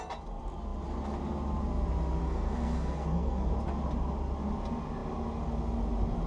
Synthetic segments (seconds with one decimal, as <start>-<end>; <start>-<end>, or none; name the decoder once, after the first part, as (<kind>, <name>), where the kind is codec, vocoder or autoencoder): 2.2-3.5 (codec, SNAC)